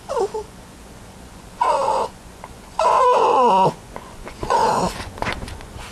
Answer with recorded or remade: remade